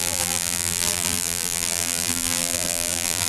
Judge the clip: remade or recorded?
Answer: remade